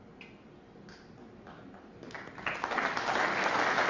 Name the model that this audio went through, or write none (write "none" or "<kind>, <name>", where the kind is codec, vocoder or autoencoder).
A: none